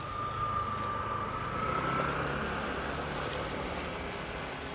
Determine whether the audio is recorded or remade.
recorded